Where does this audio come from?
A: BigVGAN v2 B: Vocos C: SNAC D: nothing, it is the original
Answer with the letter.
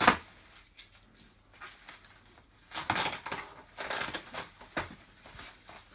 D